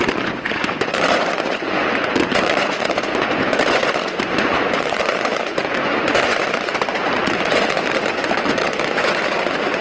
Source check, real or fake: fake